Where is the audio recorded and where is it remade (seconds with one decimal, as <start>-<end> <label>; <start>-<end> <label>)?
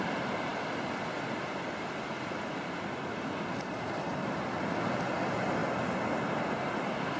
0.0-7.2 recorded